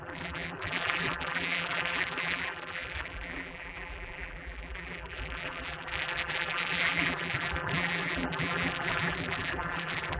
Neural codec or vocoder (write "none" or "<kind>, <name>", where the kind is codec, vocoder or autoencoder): vocoder, BigVGAN v2